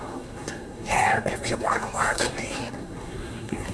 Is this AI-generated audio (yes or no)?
yes